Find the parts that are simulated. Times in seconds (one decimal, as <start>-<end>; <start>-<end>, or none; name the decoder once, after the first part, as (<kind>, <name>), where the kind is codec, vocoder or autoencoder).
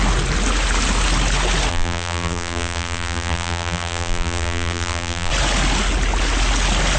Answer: 1.7-5.3 (vocoder, BigVGAN v2)